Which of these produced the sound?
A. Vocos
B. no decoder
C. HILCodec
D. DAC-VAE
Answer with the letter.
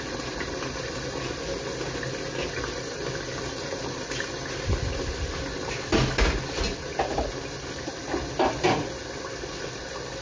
B